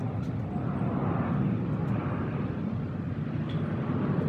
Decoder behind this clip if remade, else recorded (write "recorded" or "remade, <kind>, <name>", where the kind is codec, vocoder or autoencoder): recorded